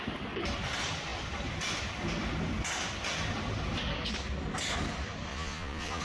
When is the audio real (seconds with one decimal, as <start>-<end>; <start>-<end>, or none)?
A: 0.0-5.3